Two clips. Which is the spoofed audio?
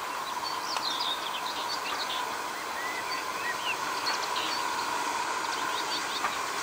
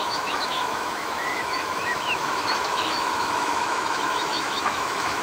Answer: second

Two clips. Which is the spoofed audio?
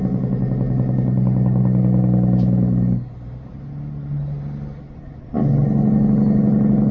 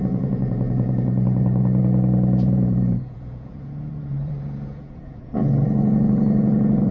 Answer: second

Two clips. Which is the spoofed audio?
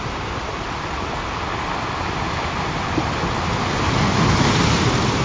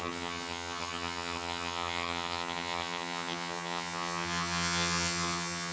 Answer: second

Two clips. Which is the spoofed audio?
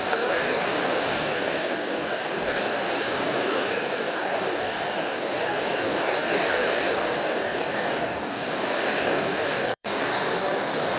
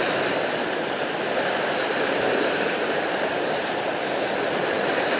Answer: first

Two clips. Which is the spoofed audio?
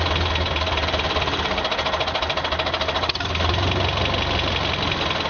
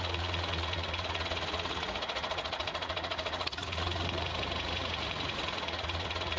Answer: second